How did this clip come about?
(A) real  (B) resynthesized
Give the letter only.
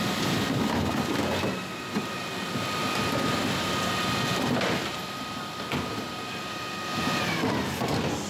A